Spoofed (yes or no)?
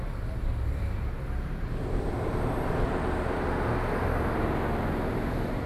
no